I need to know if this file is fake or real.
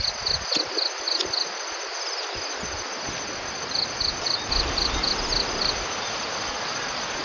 real